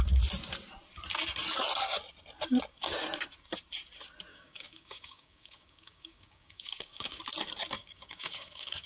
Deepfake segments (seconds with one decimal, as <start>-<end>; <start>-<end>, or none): 4.3-7.2; 7.8-8.9